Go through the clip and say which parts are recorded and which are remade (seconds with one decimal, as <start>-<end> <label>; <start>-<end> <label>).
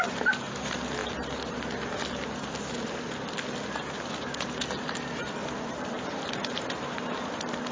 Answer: 0.0-5.4 recorded; 5.4-7.2 remade; 7.2-7.7 recorded